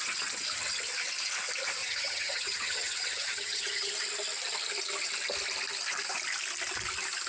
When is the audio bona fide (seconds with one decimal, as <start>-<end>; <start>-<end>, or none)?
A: 0.0-1.8; 3.9-7.3